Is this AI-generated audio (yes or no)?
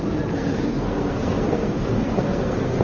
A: yes